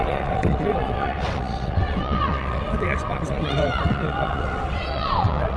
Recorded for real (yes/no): no